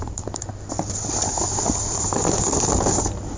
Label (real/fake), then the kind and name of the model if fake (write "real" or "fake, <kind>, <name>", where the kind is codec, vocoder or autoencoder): real